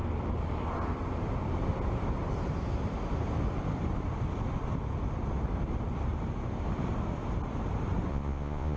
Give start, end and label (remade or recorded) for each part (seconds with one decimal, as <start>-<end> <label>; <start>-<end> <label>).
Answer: 0.0-8.1 recorded; 8.1-8.8 remade

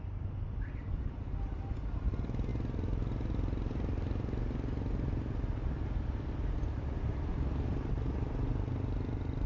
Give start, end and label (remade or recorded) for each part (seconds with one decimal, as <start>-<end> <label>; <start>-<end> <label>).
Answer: 0.0-9.5 recorded

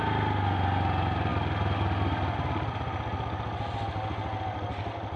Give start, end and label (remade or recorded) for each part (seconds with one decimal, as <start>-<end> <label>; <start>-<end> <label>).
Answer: 0.0-5.2 recorded

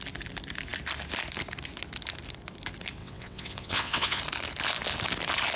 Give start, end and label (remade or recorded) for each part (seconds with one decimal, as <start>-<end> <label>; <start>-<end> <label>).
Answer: 0.0-3.0 recorded; 3.0-4.2 remade; 4.2-5.6 recorded

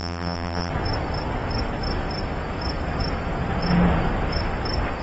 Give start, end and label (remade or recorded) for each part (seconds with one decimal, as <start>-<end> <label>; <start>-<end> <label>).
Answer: 0.0-0.7 remade; 0.7-5.0 recorded

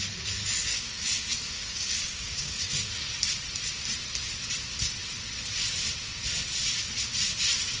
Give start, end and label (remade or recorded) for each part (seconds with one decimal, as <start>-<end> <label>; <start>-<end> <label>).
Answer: 0.0-0.7 recorded; 0.7-2.9 remade; 2.9-7.8 recorded

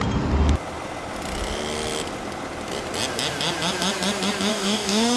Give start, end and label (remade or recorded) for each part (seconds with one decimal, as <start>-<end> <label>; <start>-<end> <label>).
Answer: 0.0-4.5 recorded; 4.5-5.2 remade